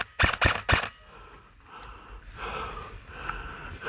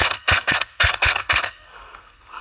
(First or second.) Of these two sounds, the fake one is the second